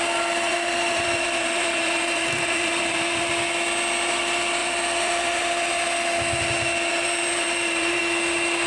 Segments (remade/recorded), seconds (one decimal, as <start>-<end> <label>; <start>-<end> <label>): 0.0-0.5 recorded; 0.5-3.3 remade; 3.3-4.6 recorded; 4.6-5.7 remade; 5.7-6.9 recorded; 6.9-8.0 remade; 8.0-8.7 recorded